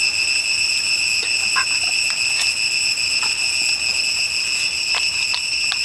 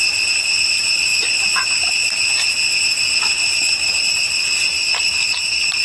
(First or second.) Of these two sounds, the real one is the first